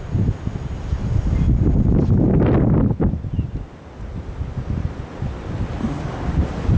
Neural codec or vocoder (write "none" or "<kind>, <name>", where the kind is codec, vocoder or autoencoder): none